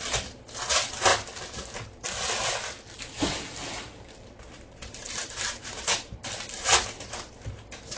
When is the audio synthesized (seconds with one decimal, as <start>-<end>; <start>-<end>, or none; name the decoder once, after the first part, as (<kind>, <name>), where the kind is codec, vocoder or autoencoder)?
0.0-1.1 (vocoder, BigVGAN v2); 3.0-8.0